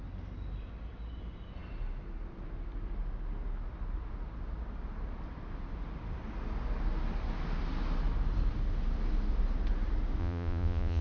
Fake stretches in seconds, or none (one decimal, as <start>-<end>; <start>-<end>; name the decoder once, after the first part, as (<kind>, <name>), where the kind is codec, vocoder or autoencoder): 10.2-11.0 (vocoder, Vocos)